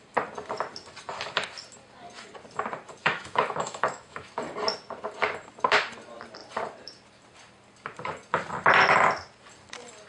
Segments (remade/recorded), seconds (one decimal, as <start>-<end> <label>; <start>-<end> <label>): 0.0-3.0 recorded; 3.0-4.3 remade; 4.3-10.1 recorded